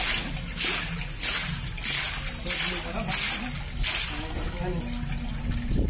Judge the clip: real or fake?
real